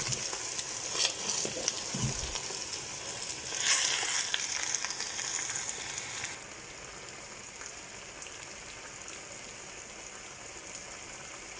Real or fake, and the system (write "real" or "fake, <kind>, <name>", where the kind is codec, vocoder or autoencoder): real